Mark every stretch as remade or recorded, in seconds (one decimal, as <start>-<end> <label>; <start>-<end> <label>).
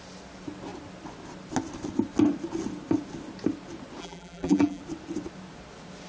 0.0-4.0 recorded; 4.0-4.8 remade; 4.8-6.1 recorded